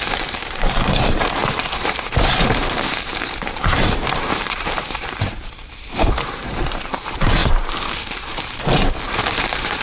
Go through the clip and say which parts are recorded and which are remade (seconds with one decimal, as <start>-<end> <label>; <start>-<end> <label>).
0.0-9.8 remade